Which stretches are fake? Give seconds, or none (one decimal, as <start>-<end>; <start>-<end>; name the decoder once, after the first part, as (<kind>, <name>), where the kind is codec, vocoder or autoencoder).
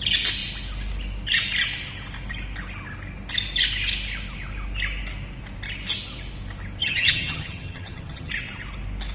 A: 6.8-8.3 (vocoder, HiFi-GAN)